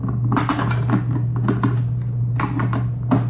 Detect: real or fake real